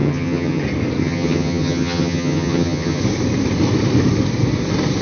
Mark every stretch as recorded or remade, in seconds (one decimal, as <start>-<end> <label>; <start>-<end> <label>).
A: 0.0-0.6 remade; 0.6-1.0 recorded; 1.0-3.0 remade; 3.0-5.0 recorded